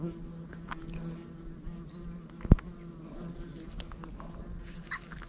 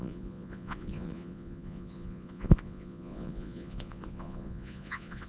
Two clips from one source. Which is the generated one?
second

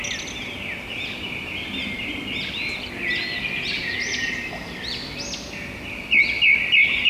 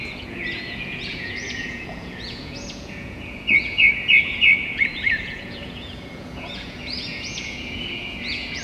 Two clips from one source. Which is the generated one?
second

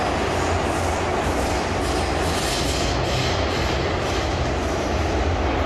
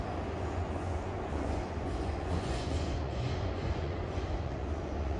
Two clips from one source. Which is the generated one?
second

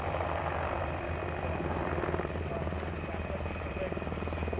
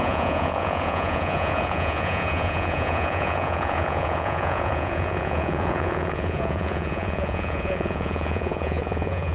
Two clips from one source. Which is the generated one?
second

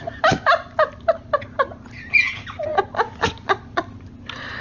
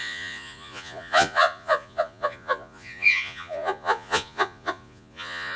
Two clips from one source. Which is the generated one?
second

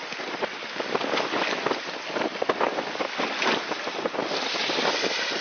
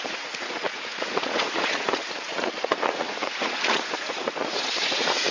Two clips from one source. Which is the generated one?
second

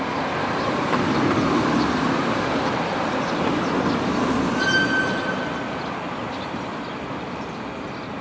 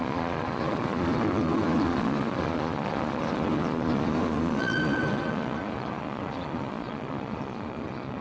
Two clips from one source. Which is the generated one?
second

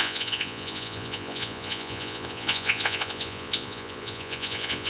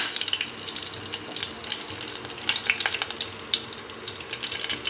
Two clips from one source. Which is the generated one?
first